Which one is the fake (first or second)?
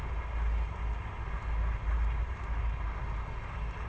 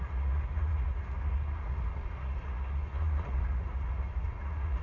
second